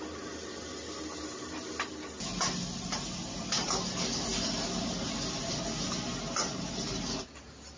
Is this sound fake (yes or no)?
no